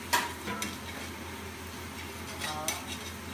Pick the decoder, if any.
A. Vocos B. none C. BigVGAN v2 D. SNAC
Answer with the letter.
B